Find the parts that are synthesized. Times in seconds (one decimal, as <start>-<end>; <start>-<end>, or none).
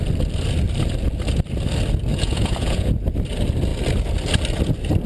2.1-2.9